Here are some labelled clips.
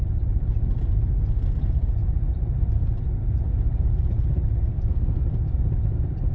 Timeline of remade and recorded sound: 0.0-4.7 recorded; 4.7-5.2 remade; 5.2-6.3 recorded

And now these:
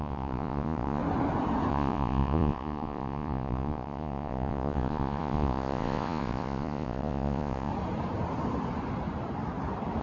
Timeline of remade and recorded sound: 0.0-1.0 remade; 1.0-1.7 recorded; 1.7-7.7 remade; 7.7-10.0 recorded